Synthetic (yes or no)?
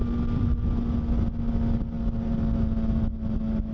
no